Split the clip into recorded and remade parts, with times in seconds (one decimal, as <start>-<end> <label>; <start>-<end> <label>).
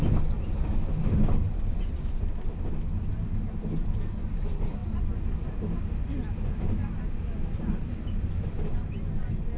0.0-9.6 recorded